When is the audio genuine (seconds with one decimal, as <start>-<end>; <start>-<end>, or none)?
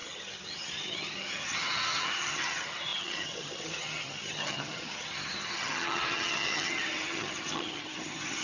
none